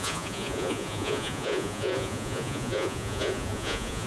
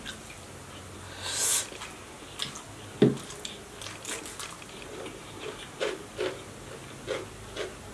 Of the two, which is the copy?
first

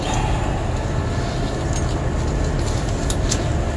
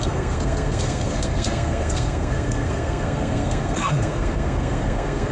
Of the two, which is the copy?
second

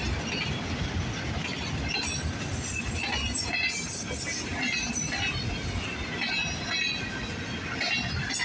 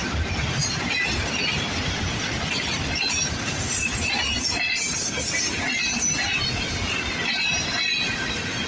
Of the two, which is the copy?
second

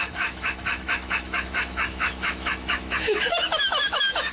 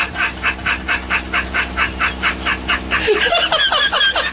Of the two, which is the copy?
first